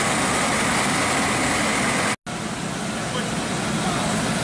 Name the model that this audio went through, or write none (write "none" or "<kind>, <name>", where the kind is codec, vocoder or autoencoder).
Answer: none